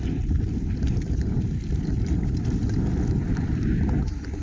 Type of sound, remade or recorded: recorded